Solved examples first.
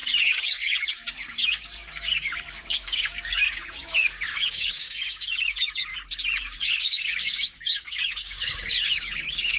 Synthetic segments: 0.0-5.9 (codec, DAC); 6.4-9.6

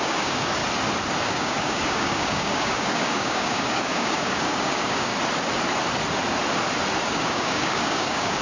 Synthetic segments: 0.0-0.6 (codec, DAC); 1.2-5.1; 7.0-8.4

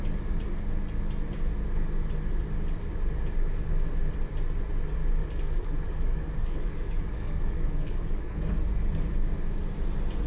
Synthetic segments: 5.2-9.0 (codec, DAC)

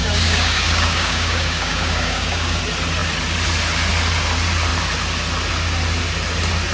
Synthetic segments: 0.0-2.6 (codec, DAC)

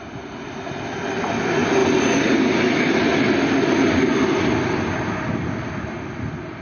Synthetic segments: none

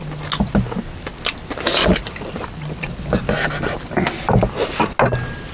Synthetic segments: none

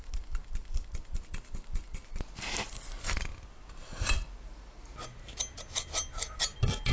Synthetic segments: none